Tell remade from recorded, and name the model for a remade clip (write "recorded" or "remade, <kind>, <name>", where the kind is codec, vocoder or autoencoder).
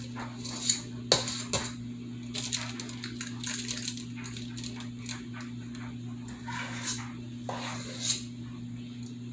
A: recorded